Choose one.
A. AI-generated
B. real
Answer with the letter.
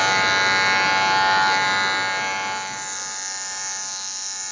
B